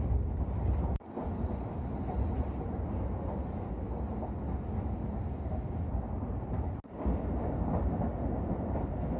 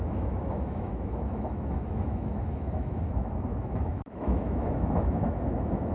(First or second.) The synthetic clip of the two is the second